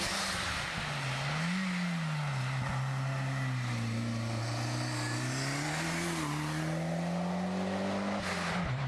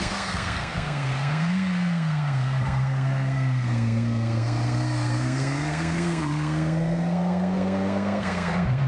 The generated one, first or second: second